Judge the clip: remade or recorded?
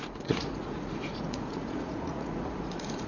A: remade